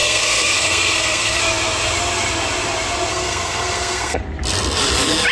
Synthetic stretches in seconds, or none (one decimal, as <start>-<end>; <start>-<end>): 0.0-1.4; 3.1-4.2